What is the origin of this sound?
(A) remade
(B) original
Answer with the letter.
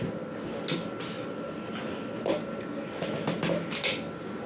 B